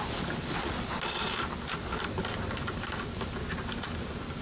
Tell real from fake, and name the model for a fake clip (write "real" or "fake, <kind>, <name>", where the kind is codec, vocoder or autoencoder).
real